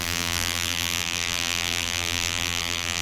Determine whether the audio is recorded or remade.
remade